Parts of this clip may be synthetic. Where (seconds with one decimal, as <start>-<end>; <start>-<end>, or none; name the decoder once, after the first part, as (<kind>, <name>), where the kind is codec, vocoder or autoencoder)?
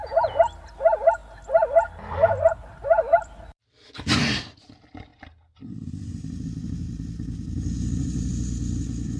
0.0-1.2 (vocoder, BigVGAN v2); 2.5-5.1